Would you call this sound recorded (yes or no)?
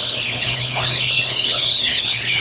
no